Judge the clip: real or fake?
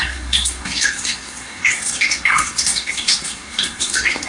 fake